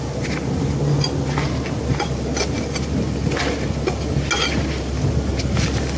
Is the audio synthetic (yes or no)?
no